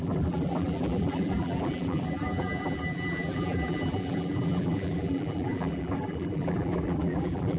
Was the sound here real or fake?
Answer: fake